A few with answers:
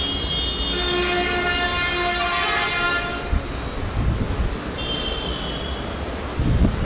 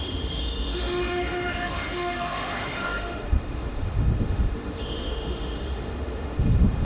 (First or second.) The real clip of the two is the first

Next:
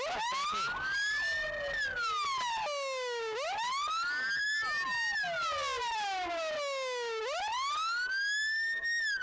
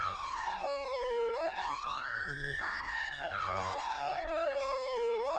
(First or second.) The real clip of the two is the first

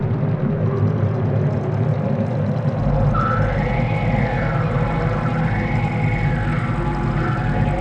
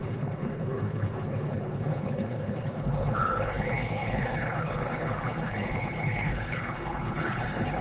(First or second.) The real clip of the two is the first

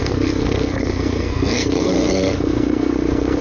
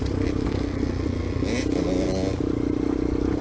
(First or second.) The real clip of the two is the second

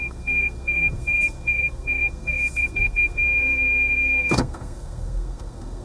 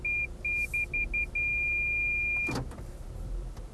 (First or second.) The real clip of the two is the second